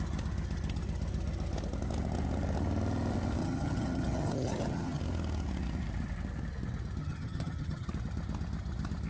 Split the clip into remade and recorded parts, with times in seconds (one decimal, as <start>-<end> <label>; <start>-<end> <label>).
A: 0.0-3.4 recorded; 3.4-5.0 remade; 5.0-7.0 recorded; 7.0-7.9 remade; 7.9-9.1 recorded